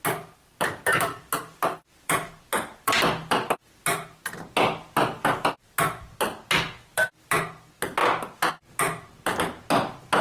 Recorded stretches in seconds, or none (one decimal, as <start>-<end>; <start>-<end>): 0.0-0.4; 4.2-6.9; 7.4-10.2

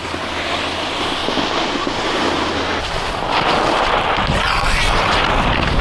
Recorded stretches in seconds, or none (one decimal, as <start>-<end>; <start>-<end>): 0.0-5.8

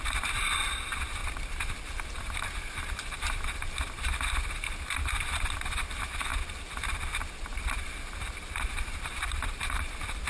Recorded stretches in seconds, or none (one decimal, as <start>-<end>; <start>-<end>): 6.3-8.2